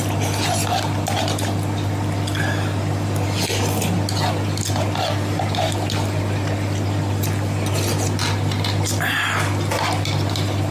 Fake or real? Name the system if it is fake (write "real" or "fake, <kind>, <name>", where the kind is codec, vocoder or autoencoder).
real